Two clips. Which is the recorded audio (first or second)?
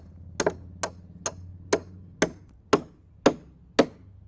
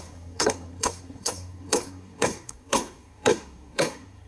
first